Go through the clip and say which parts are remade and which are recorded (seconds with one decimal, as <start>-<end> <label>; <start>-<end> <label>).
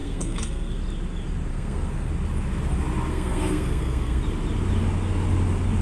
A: 0.0-0.8 remade; 0.8-1.5 recorded; 1.5-2.1 remade; 2.1-3.1 recorded; 3.1-4.2 remade; 4.2-5.8 recorded